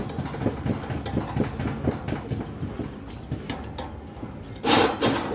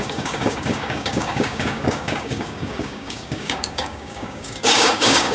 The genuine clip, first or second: first